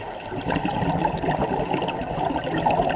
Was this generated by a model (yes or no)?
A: no